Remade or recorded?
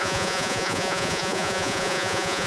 remade